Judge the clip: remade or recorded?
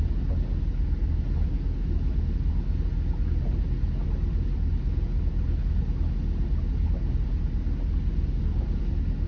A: recorded